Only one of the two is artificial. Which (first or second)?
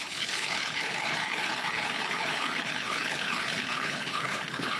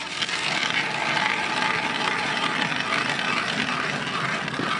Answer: first